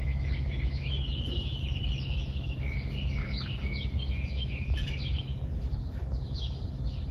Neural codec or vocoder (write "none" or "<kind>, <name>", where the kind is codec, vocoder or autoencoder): autoencoder, DAC-VAE